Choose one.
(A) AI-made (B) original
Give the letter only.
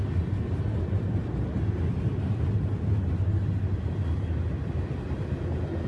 B